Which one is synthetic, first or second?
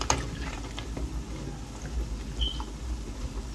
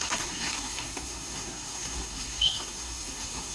second